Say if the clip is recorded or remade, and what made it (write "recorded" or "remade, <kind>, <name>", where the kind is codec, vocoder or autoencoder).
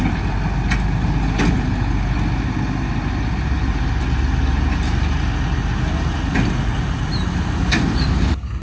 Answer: recorded